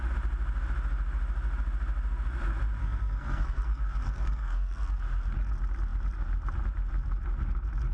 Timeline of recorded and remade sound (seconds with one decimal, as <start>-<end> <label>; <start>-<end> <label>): 0.0-2.8 recorded; 2.8-5.0 remade; 5.0-7.9 recorded